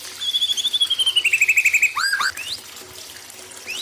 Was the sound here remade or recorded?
recorded